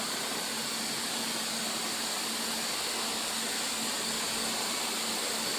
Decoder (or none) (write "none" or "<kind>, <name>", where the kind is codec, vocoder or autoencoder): none